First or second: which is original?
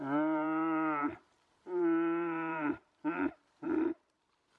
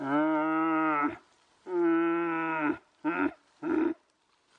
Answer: second